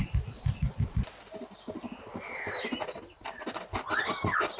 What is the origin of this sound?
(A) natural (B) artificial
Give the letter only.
A